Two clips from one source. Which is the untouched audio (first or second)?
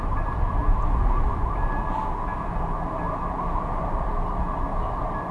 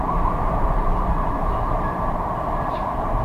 first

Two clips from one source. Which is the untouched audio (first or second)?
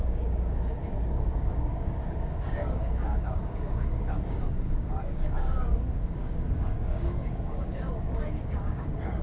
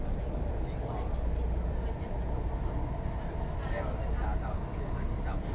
second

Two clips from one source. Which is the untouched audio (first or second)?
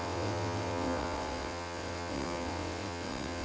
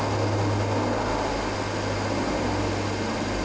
second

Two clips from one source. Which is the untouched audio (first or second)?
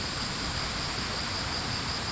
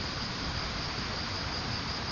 first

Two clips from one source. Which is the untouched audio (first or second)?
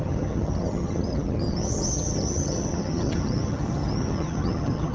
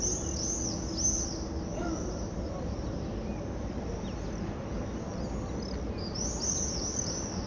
second